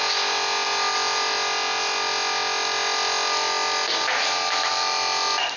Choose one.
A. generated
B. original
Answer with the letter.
B